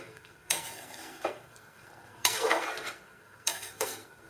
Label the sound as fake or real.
fake